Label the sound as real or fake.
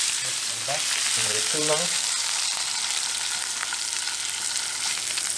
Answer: fake